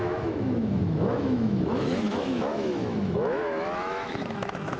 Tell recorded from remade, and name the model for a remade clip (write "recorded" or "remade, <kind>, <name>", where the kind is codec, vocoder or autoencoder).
remade, autoencoder, DAC-VAE